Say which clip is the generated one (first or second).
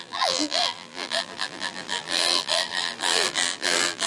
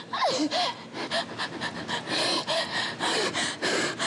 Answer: first